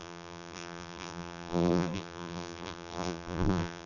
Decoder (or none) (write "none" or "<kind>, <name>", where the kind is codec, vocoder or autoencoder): vocoder, BigVGAN v2